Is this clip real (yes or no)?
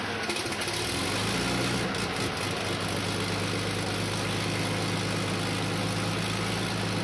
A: yes